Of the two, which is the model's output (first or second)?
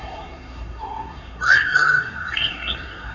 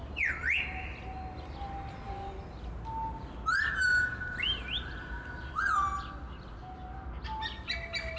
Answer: first